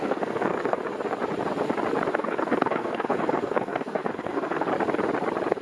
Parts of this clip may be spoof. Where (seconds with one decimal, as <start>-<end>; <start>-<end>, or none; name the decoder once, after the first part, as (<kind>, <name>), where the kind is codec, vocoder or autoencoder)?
0.0-0.8 (codec, SNAC); 2.1-4.7